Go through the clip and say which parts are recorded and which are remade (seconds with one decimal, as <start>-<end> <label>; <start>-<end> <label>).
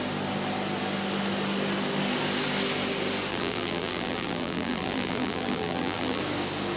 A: 0.0-3.3 recorded; 3.3-6.2 remade; 6.2-6.8 recorded